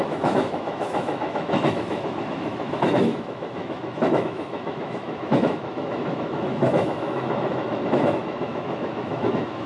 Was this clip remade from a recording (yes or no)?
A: yes